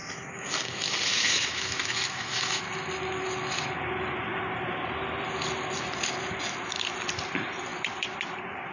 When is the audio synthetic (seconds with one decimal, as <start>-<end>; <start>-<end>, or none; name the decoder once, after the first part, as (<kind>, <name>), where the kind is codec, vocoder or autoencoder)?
0.0-2.6 (autoencoder, DAC-VAE)